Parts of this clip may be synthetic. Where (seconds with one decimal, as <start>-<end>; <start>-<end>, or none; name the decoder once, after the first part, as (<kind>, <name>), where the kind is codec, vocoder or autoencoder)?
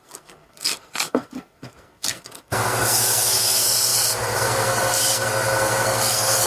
0.0-6.5 (codec, SNAC)